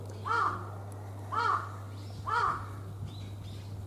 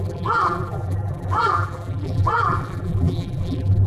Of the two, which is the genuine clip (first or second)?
first